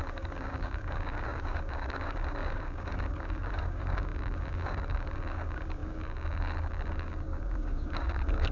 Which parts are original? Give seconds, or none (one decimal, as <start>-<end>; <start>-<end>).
none